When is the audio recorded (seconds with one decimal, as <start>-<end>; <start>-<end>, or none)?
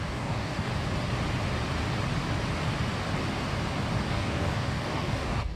0.7-4.1